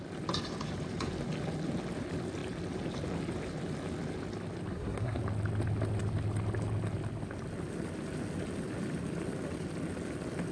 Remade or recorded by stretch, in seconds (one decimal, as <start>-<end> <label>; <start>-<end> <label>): 0.0-4.7 recorded; 4.7-5.2 remade; 5.2-10.5 recorded